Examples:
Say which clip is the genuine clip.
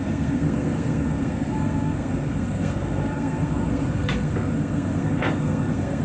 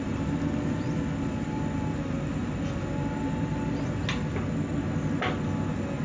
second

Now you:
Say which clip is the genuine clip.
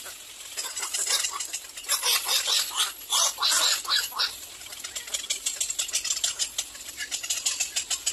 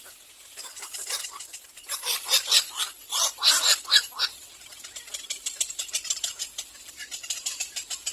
first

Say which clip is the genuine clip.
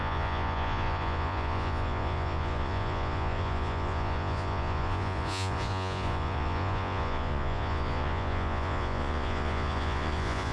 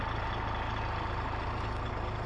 second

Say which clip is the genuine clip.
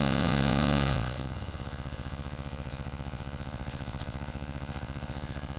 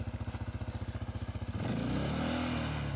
second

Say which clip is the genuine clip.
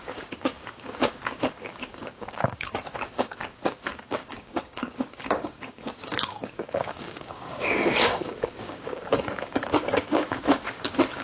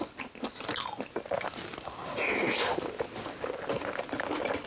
second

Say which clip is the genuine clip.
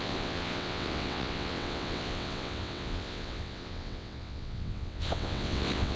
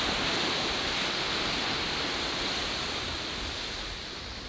second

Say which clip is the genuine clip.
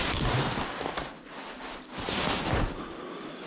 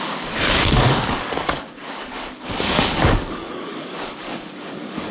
first